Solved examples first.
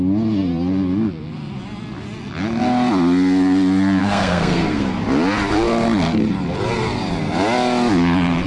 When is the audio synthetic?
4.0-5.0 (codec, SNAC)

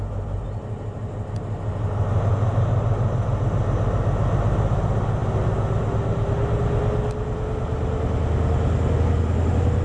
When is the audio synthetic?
none

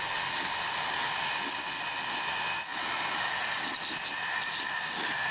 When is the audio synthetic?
none

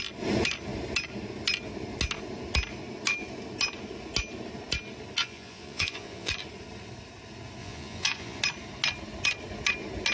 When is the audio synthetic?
5.2-6.3 (vocoder, Vocos); 7.6-8.4

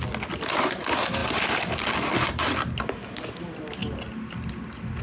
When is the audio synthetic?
none

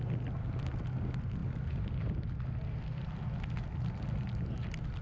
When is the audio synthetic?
none

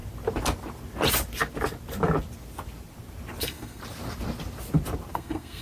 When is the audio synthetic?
3.4-3.8 (codec, SNAC); 5.1-5.6